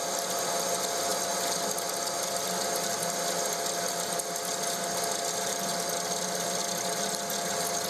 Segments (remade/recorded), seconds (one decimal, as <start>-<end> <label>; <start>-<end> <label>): 0.0-7.9 recorded